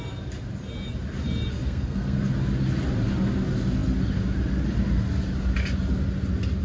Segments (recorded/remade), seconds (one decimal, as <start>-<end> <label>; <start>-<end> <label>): 0.0-1.5 recorded; 1.5-2.2 remade; 2.2-6.6 recorded